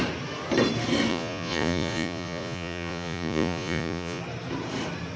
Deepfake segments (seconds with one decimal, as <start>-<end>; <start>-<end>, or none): 1.1-4.2